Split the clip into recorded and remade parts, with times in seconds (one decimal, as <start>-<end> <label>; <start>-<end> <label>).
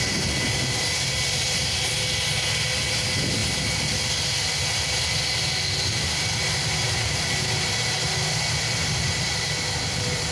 0.0-10.3 recorded